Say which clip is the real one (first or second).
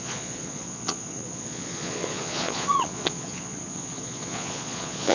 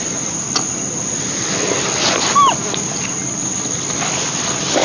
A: second